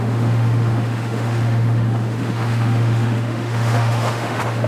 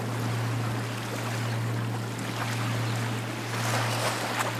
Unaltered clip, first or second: second